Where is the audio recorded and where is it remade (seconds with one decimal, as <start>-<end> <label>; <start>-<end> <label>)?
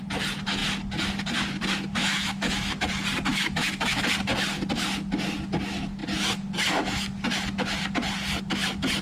0.0-2.0 recorded; 2.0-2.8 remade; 2.8-3.3 recorded; 3.3-4.0 remade; 4.0-9.0 recorded